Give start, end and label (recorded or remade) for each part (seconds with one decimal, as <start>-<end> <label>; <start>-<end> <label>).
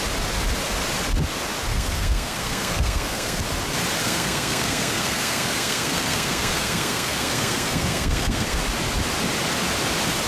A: 0.0-1.7 recorded; 1.7-3.4 remade; 3.4-4.0 recorded; 4.0-8.6 remade; 8.6-10.3 recorded